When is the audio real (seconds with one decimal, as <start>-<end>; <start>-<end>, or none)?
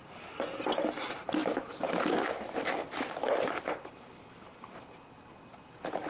0.0-6.1